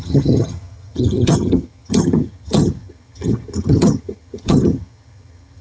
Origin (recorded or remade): remade